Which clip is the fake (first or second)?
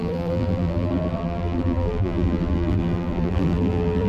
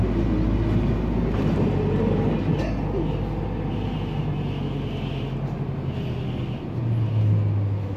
first